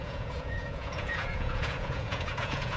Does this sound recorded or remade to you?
remade